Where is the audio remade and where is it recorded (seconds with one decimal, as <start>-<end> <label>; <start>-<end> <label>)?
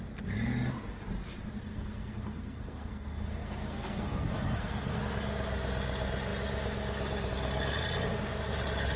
0.0-1.7 recorded; 1.7-5.0 remade; 5.0-9.0 recorded